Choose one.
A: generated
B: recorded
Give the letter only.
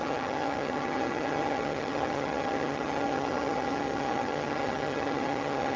A